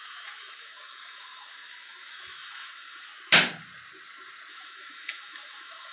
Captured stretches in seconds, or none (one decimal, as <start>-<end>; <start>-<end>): 3.1-4.5